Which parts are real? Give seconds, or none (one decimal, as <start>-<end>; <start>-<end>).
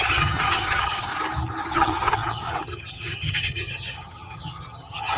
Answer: 1.1-1.7